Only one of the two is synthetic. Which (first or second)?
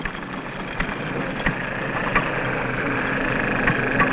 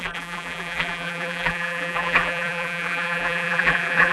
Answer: second